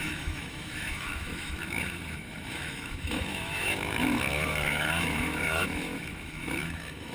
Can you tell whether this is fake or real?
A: fake